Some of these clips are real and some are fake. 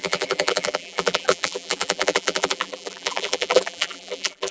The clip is fake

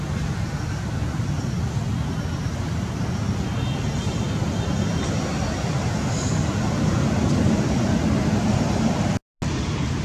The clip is real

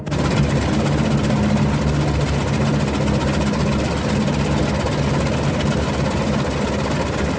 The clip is real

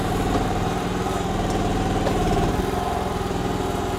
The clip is fake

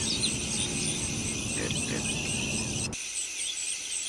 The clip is real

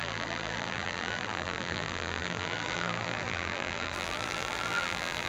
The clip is fake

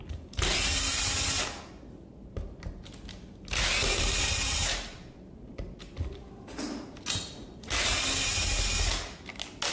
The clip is real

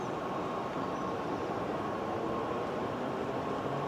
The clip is real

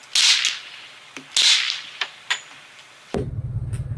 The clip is real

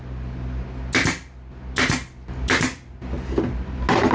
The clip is real